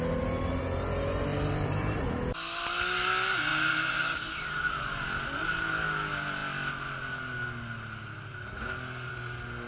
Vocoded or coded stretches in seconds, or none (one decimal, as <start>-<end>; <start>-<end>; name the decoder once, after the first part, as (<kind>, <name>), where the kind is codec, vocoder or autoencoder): 1.3-2.1 (vocoder, BigVGAN v2); 3.5-5.1